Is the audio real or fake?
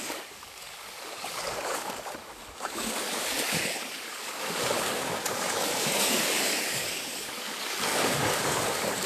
fake